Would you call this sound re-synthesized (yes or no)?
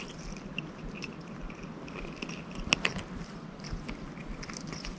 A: no